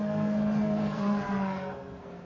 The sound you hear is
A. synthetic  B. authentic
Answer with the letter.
A